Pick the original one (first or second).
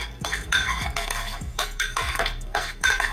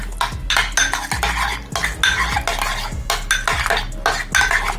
second